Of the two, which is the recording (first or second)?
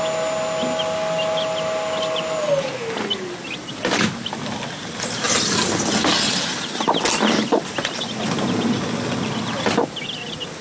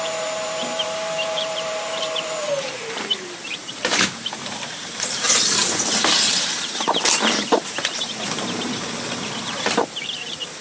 first